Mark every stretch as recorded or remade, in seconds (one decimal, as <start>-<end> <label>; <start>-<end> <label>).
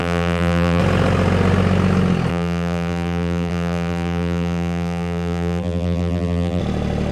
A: 0.0-0.8 remade; 0.8-2.3 recorded; 2.3-6.6 remade; 6.6-7.1 recorded